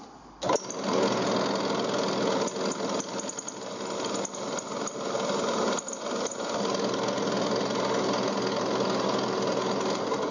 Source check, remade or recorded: recorded